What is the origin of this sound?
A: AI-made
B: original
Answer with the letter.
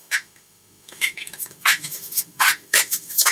A